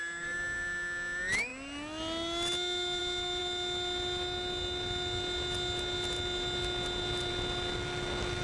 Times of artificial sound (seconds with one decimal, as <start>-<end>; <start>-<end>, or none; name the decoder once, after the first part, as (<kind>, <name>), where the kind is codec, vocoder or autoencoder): none